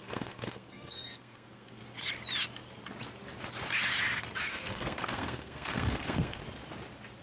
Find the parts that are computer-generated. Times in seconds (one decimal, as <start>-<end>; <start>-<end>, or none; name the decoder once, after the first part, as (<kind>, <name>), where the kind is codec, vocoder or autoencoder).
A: 0.0-1.8 (codec, SNAC); 4.5-6.4